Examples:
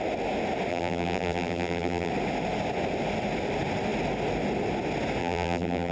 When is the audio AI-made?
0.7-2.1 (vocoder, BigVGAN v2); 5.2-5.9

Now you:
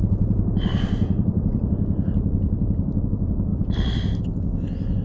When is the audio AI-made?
0.0-3.0 (vocoder, BigVGAN v2); 3.5-4.2

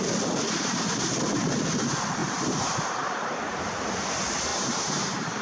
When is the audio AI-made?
2.2-3.4 (vocoder, BigVGAN v2); 4.5-5.4

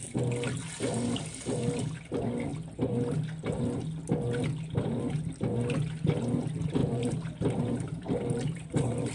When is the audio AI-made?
6.8-9.1 (vocoder, BigVGAN v2)

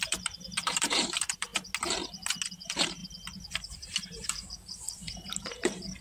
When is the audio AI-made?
0.0-1.5 (vocoder, BigVGAN v2); 2.5-5.0; 5.5-6.0

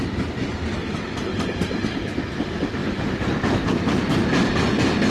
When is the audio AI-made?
none

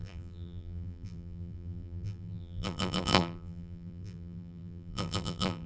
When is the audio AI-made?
0.0-5.7 (vocoder, BigVGAN v2)

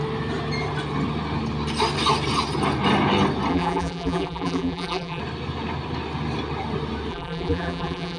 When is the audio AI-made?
3.5-5.2 (vocoder, BigVGAN v2); 7.1-8.2